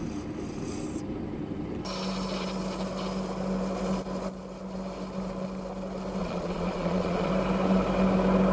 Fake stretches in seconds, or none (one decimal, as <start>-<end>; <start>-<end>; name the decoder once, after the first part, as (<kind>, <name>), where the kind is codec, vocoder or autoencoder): 6.2-7.3 (vocoder, Vocos)